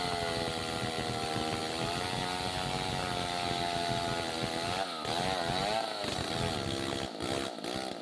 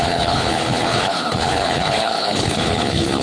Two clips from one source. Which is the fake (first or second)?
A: second